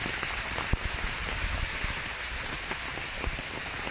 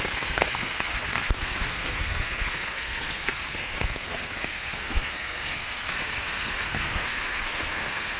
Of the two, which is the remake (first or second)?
second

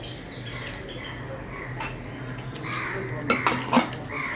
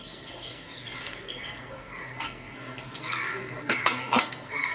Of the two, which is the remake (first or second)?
second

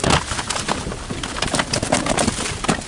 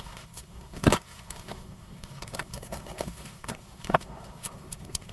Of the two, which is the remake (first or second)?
second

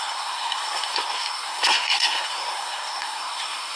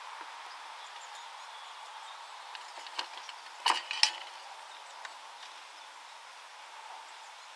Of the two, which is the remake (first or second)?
first